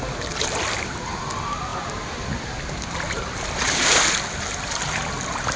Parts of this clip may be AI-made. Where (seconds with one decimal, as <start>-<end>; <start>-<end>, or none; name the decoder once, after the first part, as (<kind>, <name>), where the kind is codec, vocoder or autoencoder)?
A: none